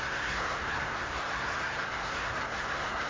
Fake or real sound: fake